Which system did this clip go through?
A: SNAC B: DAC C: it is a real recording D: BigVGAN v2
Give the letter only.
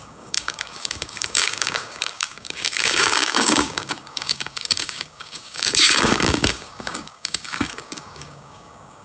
B